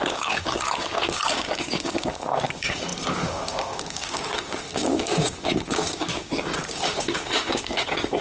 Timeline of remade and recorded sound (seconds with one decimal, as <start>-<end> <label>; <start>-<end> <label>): 0.0-8.2 remade